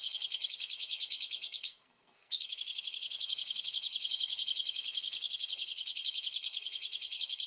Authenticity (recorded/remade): remade